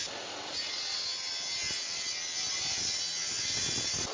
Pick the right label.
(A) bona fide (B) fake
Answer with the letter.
A